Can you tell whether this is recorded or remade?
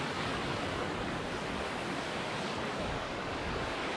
remade